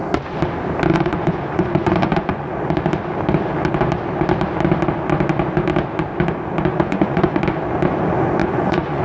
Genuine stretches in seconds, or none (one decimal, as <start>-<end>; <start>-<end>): 0.0-0.9; 2.5-6.7; 7.4-8.4